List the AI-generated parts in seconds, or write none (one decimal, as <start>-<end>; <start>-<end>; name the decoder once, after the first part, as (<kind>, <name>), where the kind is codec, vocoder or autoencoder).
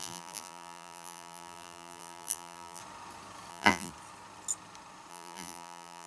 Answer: 0.0-2.8 (vocoder, BigVGAN v2); 3.5-3.9; 5.1-6.1